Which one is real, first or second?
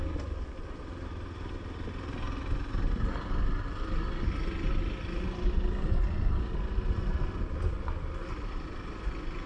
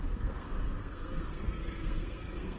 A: first